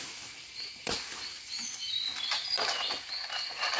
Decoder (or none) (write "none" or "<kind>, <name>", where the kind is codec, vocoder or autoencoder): none